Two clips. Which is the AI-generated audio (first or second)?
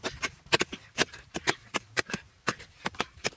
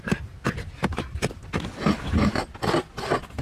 first